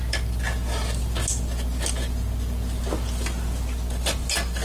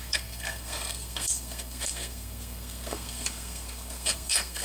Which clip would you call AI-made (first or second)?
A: second